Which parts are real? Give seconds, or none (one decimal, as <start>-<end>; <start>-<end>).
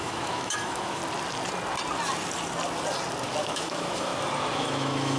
1.0-3.4; 4.1-4.6